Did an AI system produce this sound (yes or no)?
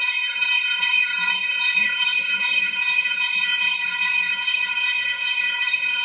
yes